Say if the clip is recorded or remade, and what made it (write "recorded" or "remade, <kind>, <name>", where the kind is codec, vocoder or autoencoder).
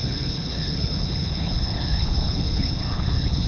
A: remade, codec, HILCodec